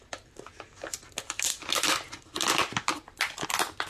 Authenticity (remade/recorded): recorded